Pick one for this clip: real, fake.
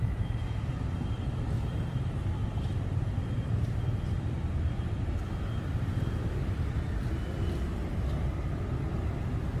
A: real